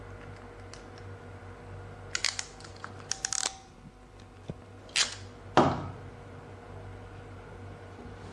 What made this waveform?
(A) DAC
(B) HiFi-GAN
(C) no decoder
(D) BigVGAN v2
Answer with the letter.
C